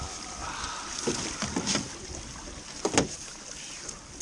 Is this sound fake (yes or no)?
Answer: no